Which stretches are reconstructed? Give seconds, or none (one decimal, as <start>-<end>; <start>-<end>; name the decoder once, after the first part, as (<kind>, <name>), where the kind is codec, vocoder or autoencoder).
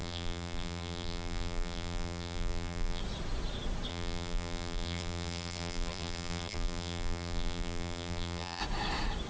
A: 0.0-3.0 (vocoder, BigVGAN v2); 3.9-8.6